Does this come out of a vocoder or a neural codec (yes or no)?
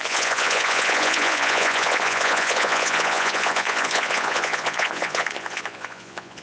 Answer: yes